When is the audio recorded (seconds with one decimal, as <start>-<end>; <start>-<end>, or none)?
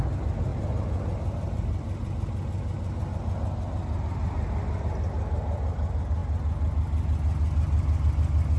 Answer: 0.0-8.6